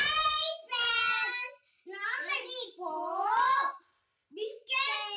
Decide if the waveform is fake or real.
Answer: real